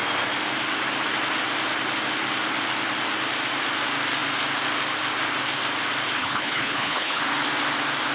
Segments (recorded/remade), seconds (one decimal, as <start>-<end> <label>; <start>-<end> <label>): 0.0-6.2 recorded; 6.2-7.2 remade; 7.2-8.1 recorded